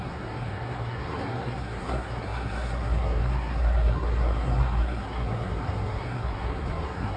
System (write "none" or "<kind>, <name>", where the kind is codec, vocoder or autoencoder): codec, SNAC